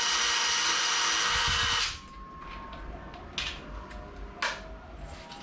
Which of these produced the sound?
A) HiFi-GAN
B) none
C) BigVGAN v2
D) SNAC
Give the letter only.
B